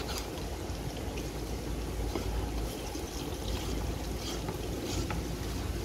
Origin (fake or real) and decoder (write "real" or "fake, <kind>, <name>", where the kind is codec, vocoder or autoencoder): real